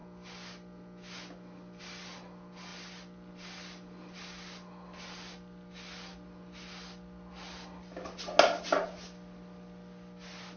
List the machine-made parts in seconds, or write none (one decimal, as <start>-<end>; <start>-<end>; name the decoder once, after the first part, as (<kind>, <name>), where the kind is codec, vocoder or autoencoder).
none